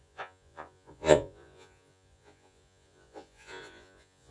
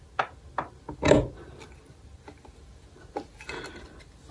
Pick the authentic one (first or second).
second